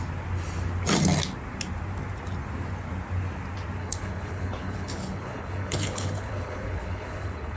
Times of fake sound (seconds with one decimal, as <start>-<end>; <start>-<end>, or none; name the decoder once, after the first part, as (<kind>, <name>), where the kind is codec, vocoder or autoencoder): 3.8-7.6 (codec, HILCodec)